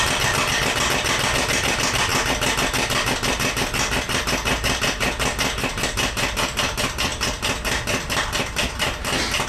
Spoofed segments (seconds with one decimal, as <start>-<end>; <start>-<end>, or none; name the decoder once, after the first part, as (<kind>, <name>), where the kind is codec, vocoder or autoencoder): none

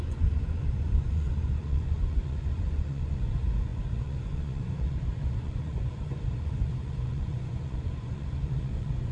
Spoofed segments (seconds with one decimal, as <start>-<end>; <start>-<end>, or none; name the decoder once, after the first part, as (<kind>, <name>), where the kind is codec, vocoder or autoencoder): 0.0-9.1 (vocoder, Vocos)

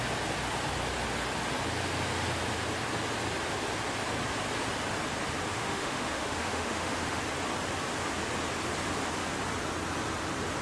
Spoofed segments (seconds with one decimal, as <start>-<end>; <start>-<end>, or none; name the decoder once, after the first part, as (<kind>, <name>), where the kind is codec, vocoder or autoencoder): 5.5-7.2 (autoencoder, DAC-VAE)

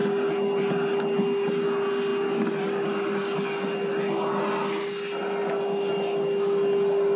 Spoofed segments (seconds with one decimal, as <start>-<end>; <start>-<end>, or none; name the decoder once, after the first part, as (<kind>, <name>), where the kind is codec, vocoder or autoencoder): none

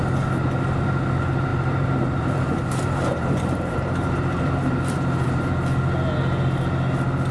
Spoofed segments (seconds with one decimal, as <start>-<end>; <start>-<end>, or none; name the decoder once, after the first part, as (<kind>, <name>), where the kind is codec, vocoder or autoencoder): 1.5-5.4 (vocoder, BigVGAN v2)